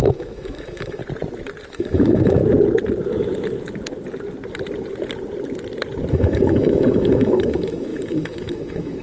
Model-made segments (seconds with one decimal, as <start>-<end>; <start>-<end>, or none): 0.0-1.0; 1.7-2.4; 6.1-9.0